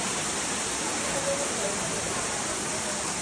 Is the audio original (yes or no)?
yes